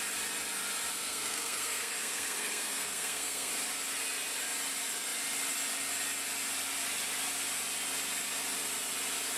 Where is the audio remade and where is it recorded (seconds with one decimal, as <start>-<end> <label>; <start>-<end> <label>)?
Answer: 0.0-0.9 recorded; 0.9-3.5 remade; 3.5-9.4 recorded